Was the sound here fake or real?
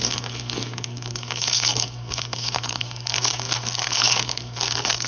fake